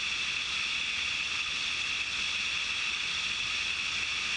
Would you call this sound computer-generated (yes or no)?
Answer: no